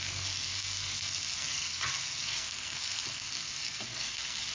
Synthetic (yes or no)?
yes